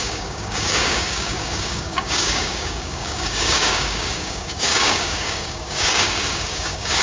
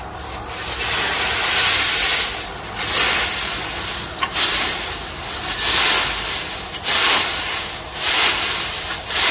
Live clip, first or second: second